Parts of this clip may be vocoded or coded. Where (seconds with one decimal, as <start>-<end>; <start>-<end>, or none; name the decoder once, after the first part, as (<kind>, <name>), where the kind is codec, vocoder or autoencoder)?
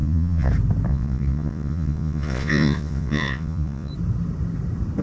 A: 0.0-0.5 (vocoder, Vocos); 0.9-3.9